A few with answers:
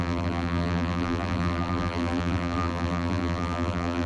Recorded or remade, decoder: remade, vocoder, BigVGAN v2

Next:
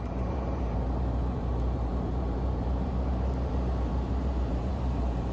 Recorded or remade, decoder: remade, vocoder, BigVGAN v2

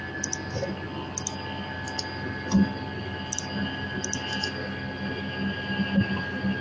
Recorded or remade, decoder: recorded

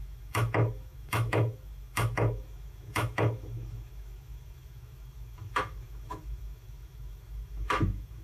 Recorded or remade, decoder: remade, autoencoder, DAC-VAE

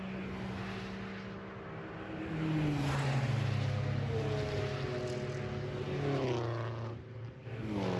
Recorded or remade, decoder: recorded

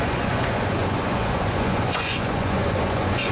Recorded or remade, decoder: remade, vocoder, Vocos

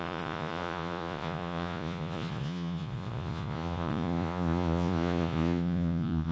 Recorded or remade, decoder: remade, vocoder, Vocos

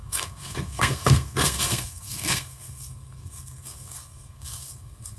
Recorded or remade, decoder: remade, codec, SNAC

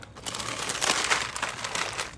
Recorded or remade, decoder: recorded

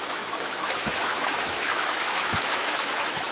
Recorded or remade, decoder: remade, autoencoder, DAC-VAE